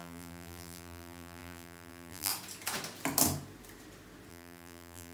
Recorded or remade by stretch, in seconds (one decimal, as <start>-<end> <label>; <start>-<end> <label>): 0.0-2.3 remade; 2.3-4.3 recorded; 4.3-5.1 remade